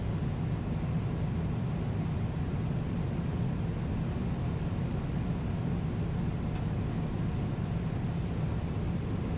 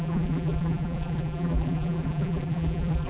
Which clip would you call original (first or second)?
first